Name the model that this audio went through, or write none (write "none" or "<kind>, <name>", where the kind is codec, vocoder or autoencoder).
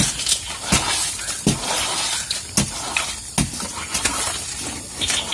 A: none